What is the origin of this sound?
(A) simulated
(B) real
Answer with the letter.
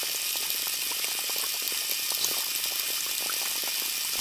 B